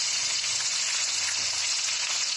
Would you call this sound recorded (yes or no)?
no